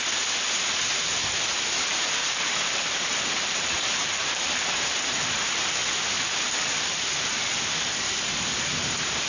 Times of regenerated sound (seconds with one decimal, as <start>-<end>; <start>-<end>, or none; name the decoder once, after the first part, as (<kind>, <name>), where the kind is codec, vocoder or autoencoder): 2.2-5.1 (vocoder, BigVGAN v2)